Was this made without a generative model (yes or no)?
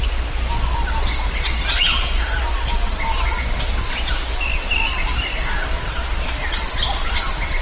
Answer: yes